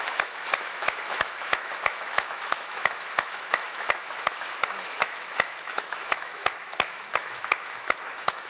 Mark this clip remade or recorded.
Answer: remade